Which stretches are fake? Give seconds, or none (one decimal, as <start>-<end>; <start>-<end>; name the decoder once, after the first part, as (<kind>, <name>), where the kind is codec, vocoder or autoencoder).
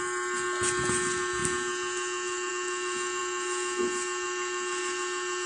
none